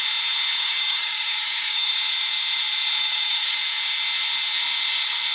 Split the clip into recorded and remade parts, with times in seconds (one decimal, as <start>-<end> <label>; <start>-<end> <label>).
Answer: 0.0-0.6 recorded; 0.6-1.9 remade; 1.9-3.0 recorded; 3.0-3.6 remade; 3.6-5.3 recorded